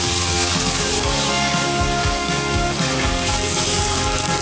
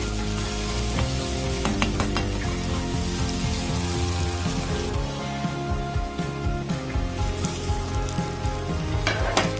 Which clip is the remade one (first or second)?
first